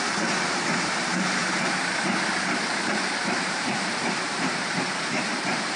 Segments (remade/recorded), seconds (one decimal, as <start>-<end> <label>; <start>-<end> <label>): 0.0-1.4 recorded; 1.4-4.8 remade; 4.8-5.8 recorded